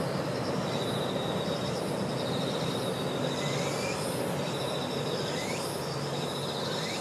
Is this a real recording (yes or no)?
yes